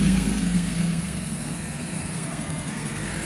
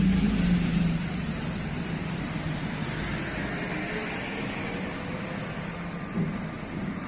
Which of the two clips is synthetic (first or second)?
first